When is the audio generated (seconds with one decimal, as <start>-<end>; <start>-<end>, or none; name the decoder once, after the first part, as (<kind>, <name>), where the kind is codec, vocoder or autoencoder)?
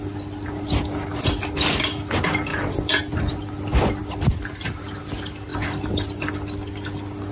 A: 2.5-3.0 (vocoder, BigVGAN v2); 5.5-6.3